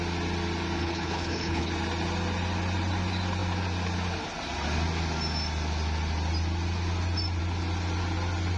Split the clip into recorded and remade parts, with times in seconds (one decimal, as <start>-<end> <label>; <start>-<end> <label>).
0.0-0.8 recorded; 0.8-1.7 remade; 1.7-8.6 recorded